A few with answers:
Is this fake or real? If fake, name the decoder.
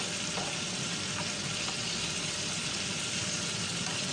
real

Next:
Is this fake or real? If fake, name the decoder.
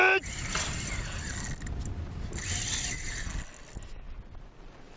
real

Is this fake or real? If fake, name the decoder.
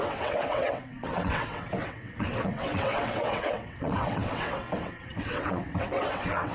fake, vocoder, WaveNeXt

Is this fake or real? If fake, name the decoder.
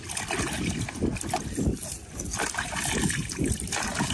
real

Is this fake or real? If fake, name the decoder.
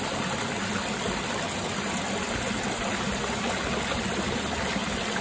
real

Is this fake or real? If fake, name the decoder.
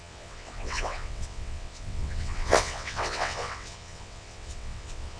fake, vocoder, WaveNeXt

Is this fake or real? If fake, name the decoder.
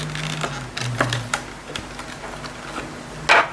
real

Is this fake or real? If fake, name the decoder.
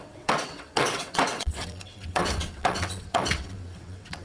fake, vocoder, WaveNeXt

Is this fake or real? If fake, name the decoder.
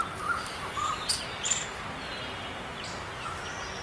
real